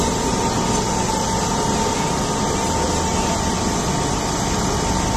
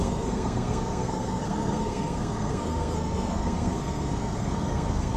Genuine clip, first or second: first